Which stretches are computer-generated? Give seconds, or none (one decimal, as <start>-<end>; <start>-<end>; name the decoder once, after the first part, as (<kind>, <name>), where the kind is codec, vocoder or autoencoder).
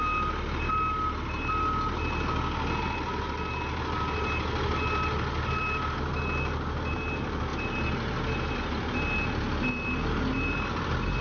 none